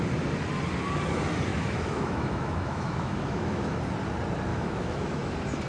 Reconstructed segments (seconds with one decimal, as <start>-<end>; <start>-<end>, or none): 1.5-3.8; 4.5-5.3